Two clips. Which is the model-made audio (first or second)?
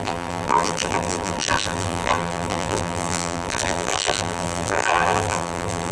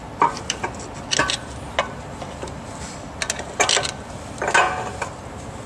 first